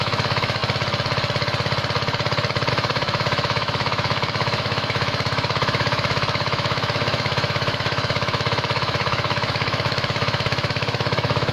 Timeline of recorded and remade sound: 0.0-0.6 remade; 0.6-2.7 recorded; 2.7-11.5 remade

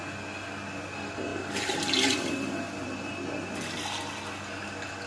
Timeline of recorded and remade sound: 0.0-5.1 recorded

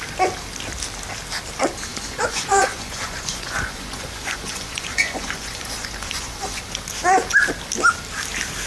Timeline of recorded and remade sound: 0.0-1.9 recorded; 1.9-6.6 remade; 6.6-8.7 recorded

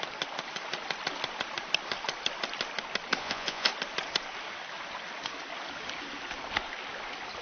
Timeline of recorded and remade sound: 0.0-3.2 recorded; 3.2-3.7 remade; 3.7-7.4 recorded

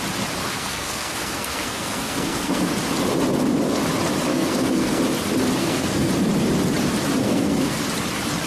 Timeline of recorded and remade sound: 0.0-0.4 recorded; 0.4-2.7 remade; 2.7-4.3 recorded; 4.3-5.0 remade; 5.0-5.6 recorded; 5.6-6.1 remade; 6.1-7.2 recorded; 7.2-7.8 remade; 7.8-8.5 recorded

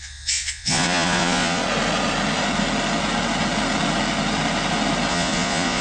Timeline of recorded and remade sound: 0.0-1.6 remade; 1.6-5.1 recorded; 5.1-5.8 remade